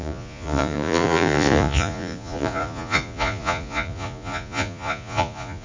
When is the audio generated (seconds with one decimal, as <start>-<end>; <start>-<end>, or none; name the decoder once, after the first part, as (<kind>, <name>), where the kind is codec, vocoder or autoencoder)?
0.0-5.6 (vocoder, Vocos)